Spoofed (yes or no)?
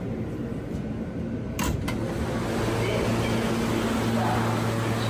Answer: no